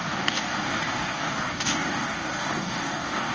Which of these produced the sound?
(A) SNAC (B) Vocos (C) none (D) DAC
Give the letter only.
D